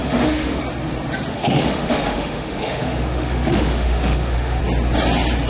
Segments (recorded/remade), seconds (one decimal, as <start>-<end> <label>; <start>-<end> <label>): 0.0-0.6 remade; 0.6-1.3 recorded; 1.3-4.6 remade; 4.6-5.5 recorded